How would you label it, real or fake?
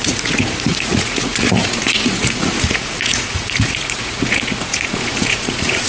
fake